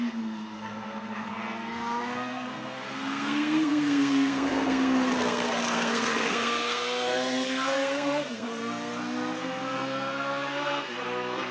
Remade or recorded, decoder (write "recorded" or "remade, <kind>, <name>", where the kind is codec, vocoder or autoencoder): remade, codec, SNAC